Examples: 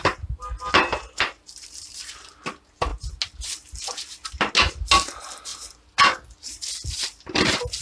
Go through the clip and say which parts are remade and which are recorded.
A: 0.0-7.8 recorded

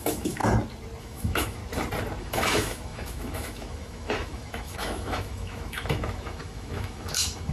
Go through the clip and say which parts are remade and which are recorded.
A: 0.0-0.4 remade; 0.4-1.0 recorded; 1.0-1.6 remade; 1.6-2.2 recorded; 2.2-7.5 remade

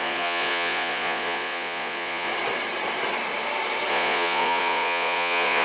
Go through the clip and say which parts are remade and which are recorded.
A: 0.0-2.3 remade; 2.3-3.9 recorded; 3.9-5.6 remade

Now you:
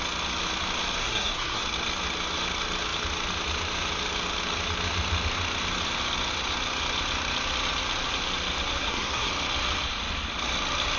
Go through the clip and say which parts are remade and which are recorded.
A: 0.0-1.0 recorded; 1.0-1.6 remade; 1.6-8.8 recorded; 8.8-9.3 remade; 9.3-11.0 recorded

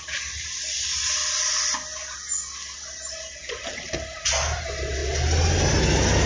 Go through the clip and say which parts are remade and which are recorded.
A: 0.0-6.3 recorded

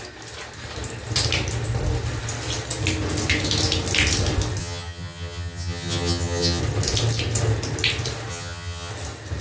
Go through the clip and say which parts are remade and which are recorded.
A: 0.0-4.6 recorded; 4.6-6.6 remade; 6.6-8.3 recorded; 8.3-8.9 remade; 8.9-9.4 recorded